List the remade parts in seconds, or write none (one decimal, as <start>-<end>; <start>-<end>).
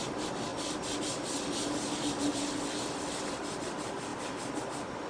none